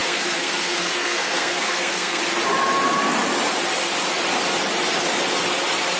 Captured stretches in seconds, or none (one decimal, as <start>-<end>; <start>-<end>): 2.2-6.0